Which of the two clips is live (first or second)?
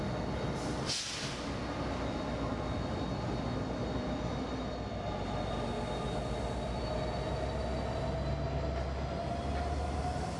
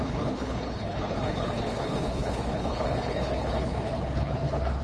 first